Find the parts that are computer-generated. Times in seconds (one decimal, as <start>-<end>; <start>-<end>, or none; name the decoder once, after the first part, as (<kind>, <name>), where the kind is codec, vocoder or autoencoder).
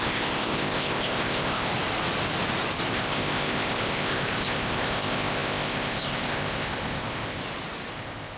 0.0-1.7 (codec, ZipCodec); 2.9-7.4; 7.9-8.4